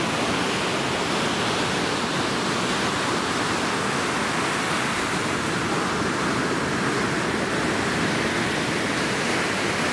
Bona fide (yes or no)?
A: yes